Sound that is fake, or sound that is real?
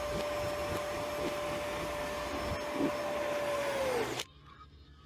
real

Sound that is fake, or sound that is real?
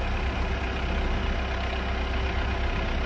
real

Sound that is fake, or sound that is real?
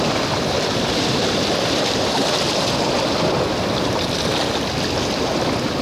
real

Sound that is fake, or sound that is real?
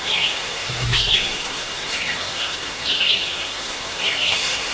fake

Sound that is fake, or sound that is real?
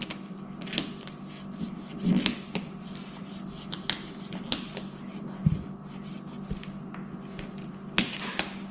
real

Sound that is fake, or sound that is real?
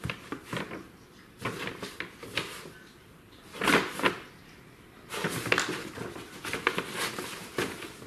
real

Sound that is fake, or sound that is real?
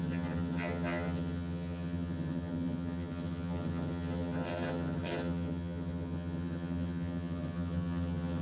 fake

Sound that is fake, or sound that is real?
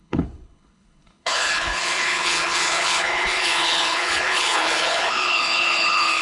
fake